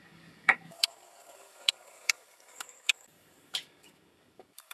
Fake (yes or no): yes